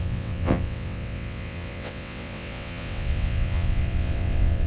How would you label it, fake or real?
fake